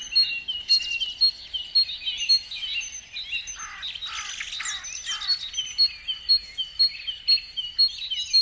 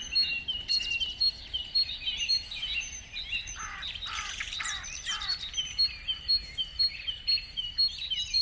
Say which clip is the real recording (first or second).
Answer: first